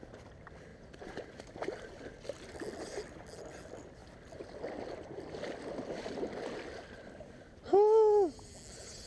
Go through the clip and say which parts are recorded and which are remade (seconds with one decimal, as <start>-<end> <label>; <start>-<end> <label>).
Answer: 0.0-9.1 recorded